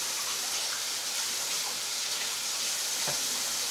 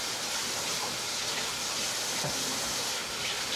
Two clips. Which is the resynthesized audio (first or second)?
first